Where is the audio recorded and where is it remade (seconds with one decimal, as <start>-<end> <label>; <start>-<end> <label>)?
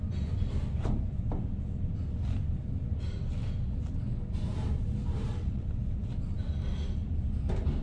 0.0-5.3 recorded; 5.3-5.8 remade; 5.8-7.8 recorded